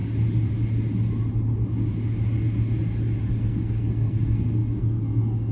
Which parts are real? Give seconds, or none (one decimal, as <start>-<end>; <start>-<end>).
0.0-3.3